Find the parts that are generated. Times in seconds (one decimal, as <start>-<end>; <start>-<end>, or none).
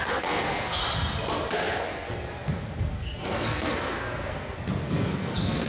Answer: 0.0-0.8; 1.5-5.7